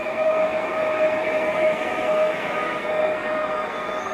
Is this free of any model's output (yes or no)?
no